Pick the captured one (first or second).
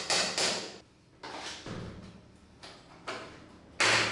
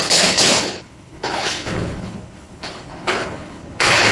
first